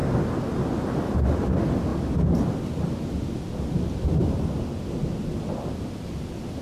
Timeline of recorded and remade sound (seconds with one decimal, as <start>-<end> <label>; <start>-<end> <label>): 0.0-6.6 recorded